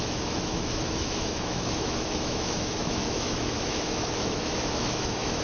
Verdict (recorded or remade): remade